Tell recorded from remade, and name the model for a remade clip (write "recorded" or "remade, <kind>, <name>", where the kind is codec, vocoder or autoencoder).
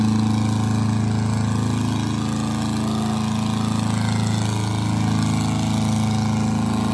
recorded